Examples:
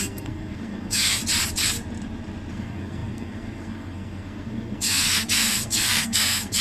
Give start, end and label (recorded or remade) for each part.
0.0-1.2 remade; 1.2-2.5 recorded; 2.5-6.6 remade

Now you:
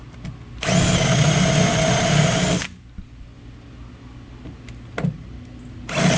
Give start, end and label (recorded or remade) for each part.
0.0-6.2 recorded

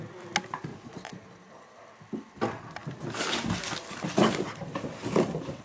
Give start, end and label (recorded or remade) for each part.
0.0-0.7 recorded; 0.7-1.8 remade; 1.8-5.6 recorded

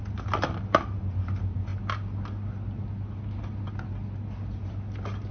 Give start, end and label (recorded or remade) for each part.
0.0-5.3 recorded